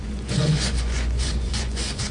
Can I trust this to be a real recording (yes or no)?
no